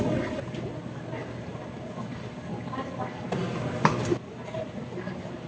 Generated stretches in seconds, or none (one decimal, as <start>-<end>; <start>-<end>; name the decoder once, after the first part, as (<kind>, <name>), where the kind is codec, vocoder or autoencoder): none